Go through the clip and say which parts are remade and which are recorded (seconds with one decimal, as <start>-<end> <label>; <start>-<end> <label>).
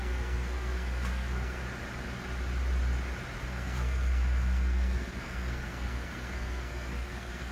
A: 0.0-1.6 remade; 1.6-3.4 recorded; 3.4-7.5 remade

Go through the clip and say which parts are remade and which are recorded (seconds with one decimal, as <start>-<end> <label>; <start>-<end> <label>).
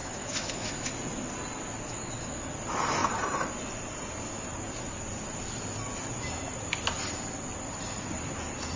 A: 0.0-0.9 remade; 0.9-1.9 recorded; 1.9-2.5 remade; 2.5-8.8 recorded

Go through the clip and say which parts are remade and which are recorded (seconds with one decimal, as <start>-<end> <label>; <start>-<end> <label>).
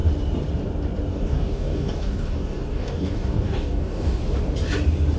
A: 0.0-1.1 recorded; 1.1-4.2 remade; 4.2-5.2 recorded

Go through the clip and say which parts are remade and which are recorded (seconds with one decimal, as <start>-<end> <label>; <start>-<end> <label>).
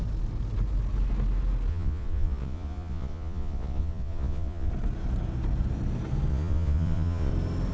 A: 0.0-1.7 recorded; 1.7-4.7 remade; 4.7-6.3 recorded; 6.3-7.3 remade; 7.3-7.7 recorded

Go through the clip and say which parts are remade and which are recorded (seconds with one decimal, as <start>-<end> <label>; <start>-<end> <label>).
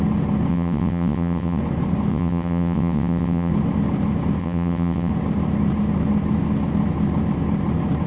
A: 0.0-0.5 recorded; 0.5-1.6 remade; 1.6-2.1 recorded; 2.1-3.5 remade; 3.5-4.4 recorded; 4.4-5.1 remade; 5.1-8.1 recorded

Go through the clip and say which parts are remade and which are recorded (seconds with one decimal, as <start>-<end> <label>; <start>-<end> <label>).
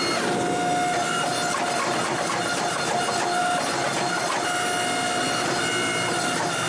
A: 0.0-6.7 recorded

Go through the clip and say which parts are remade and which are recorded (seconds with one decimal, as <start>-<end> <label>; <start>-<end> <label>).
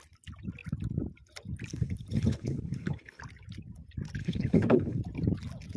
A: 0.0-1.7 recorded; 1.7-3.2 remade; 3.2-4.2 recorded; 4.2-5.0 remade; 5.0-5.8 recorded